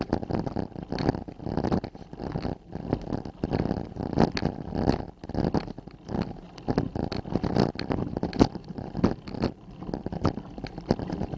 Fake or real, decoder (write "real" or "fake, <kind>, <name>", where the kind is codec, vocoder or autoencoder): real